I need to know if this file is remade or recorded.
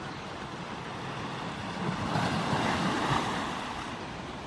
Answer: recorded